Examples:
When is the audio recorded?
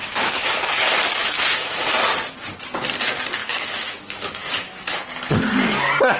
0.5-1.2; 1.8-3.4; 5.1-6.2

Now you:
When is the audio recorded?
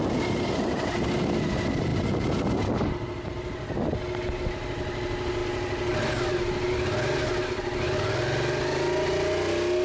0.0-9.8